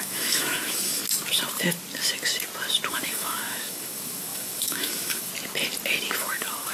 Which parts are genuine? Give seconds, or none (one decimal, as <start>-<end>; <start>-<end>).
1.0-2.9; 5.3-6.2